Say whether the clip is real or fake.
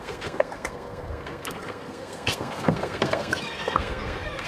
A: fake